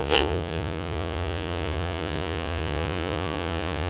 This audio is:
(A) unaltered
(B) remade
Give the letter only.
B